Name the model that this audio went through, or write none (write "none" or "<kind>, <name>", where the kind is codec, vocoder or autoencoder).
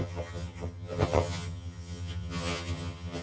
vocoder, HiFi-GAN